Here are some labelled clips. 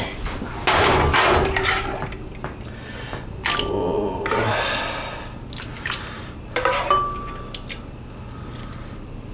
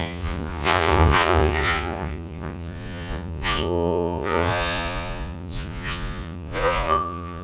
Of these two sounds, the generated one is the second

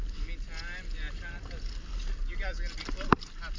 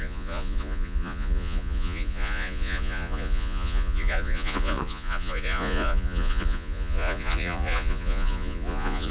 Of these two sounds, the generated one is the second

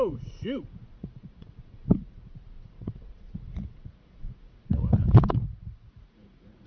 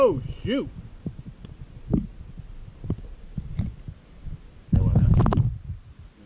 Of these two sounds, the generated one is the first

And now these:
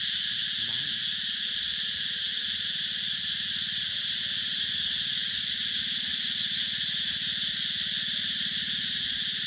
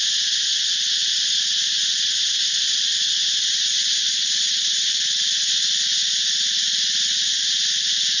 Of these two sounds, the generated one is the first